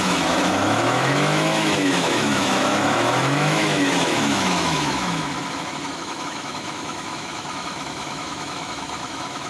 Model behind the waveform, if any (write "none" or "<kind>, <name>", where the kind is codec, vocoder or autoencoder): autoencoder, DAC-VAE